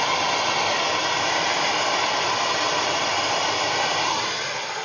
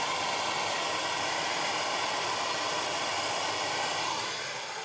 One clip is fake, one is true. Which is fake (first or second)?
second